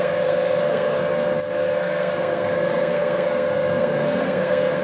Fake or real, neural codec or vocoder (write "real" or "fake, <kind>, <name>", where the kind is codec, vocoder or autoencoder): fake, codec, SNAC